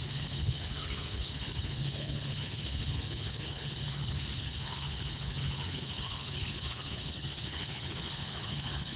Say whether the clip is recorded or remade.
remade